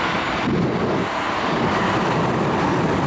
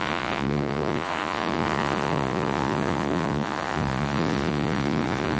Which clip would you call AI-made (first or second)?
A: second